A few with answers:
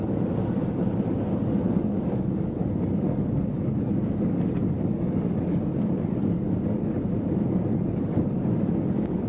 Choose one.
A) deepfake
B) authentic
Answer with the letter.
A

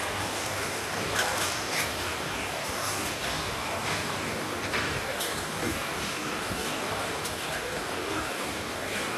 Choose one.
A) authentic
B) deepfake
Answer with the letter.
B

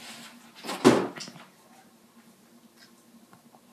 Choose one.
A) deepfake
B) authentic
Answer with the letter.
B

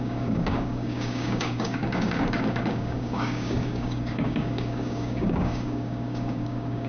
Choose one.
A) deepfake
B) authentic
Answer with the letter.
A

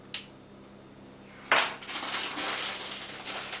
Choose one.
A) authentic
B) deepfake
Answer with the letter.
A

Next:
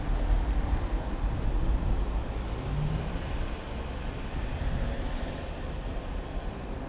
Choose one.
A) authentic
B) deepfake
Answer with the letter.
A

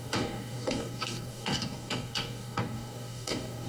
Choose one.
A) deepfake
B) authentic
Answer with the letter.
A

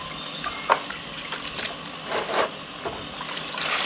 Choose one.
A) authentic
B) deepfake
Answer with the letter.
A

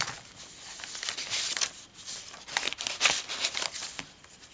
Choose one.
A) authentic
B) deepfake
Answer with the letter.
A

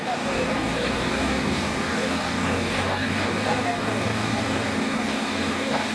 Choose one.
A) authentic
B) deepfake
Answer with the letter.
B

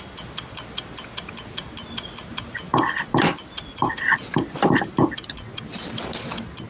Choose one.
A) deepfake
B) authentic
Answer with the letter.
B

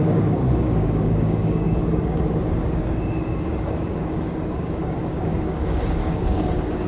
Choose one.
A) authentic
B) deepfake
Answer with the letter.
B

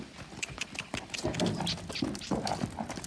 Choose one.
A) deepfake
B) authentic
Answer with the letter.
B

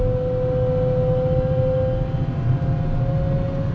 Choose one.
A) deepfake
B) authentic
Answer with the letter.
B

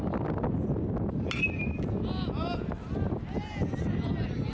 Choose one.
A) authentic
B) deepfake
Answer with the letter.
A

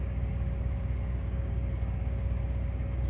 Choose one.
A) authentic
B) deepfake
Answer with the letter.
B